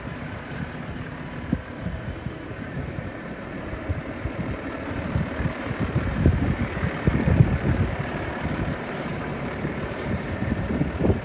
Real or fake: fake